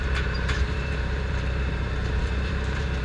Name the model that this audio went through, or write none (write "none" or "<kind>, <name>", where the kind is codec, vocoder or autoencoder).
vocoder, BigVGAN v2